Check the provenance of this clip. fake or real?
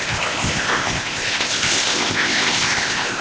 fake